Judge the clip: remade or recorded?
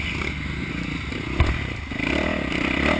recorded